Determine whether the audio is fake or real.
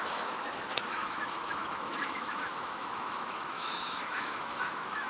fake